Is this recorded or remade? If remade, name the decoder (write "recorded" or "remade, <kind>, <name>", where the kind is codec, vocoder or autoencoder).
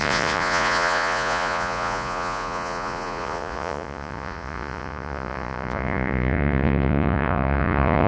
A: remade, vocoder, Vocos